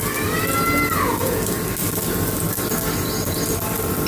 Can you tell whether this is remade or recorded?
recorded